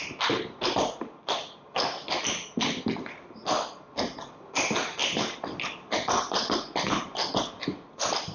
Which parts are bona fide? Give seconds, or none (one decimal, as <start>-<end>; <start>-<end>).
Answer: 0.0-5.0; 6.1-8.3